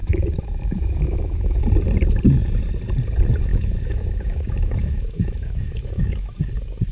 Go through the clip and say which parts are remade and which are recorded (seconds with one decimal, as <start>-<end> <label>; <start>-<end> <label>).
0.0-1.6 remade; 1.6-3.5 recorded; 3.5-6.4 remade; 6.4-6.9 recorded

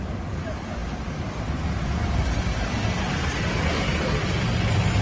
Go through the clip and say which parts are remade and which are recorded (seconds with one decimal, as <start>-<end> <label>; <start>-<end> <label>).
0.0-5.0 recorded

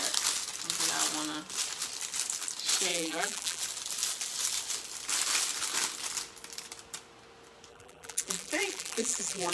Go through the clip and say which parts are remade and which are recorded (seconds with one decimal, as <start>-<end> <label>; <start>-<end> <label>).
0.0-2.9 recorded; 2.9-3.6 remade; 3.6-7.7 recorded; 7.7-9.5 remade

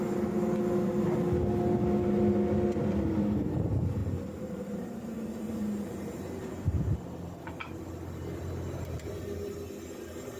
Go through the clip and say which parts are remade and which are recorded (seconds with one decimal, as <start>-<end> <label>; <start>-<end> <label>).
0.0-4.0 recorded; 4.0-6.3 remade; 6.3-10.4 recorded

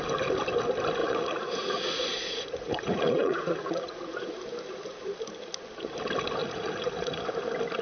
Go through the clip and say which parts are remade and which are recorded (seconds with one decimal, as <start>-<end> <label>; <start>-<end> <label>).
0.0-1.0 recorded; 1.0-4.3 remade; 4.3-6.4 recorded; 6.4-7.2 remade; 7.2-7.8 recorded

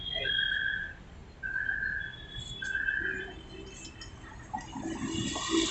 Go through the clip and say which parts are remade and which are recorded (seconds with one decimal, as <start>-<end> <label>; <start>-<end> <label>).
0.0-5.7 recorded

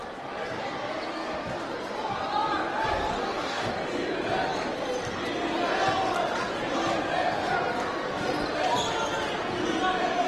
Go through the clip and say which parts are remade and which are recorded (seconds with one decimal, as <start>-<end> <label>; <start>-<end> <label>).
0.0-3.2 recorded; 3.2-3.7 remade; 3.7-10.3 recorded

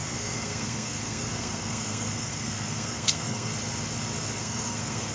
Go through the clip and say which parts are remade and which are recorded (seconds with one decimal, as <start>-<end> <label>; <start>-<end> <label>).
0.0-3.5 remade; 3.5-4.4 recorded; 4.4-5.1 remade